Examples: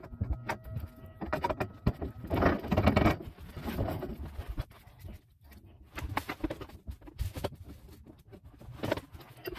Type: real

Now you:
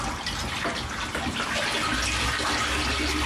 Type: real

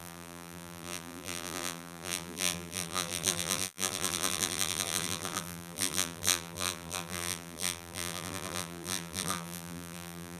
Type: fake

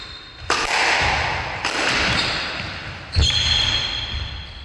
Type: real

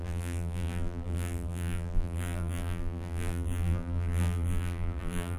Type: fake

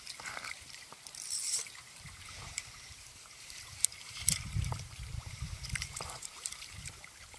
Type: fake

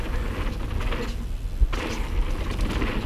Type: real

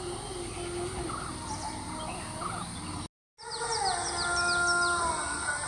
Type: real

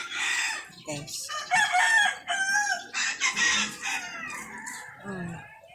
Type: real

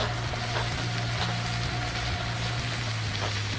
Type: real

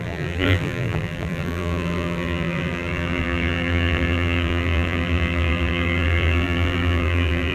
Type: fake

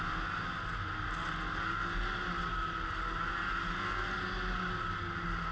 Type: real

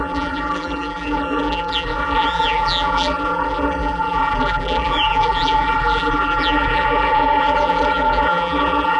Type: fake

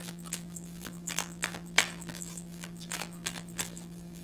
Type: fake